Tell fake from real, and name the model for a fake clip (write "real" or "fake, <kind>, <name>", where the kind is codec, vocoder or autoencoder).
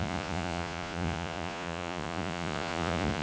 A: fake, vocoder, Vocos